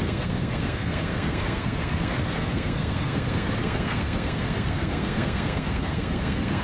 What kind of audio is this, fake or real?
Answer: fake